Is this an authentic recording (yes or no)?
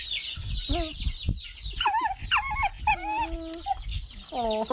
yes